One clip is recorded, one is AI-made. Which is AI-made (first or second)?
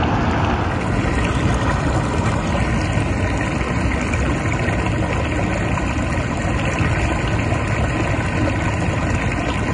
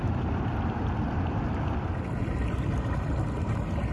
second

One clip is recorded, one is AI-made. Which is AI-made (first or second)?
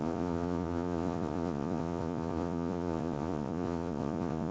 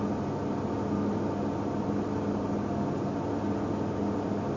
first